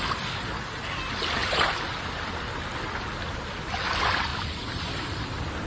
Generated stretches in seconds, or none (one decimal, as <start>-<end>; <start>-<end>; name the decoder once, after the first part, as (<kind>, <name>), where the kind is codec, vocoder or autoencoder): 1.4-2.0 (vocoder, BigVGAN v2); 4.3-5.3